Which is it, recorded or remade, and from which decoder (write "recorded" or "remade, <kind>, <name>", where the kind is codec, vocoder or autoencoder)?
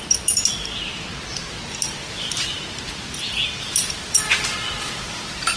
recorded